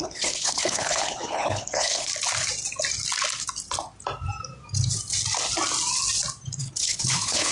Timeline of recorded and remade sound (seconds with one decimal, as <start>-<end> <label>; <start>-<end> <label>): 0.0-2.1 remade; 2.1-6.6 recorded; 6.6-7.5 remade